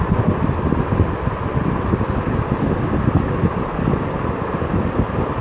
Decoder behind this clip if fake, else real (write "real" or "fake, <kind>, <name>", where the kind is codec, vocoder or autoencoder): real